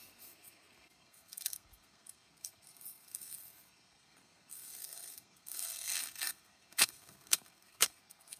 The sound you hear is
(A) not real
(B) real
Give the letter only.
A